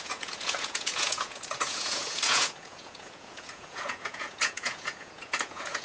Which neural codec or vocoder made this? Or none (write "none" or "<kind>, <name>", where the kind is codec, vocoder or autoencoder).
vocoder, Vocos